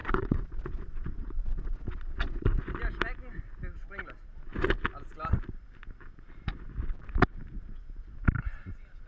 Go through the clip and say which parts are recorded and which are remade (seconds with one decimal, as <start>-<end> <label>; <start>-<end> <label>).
0.0-2.6 remade; 2.6-9.1 recorded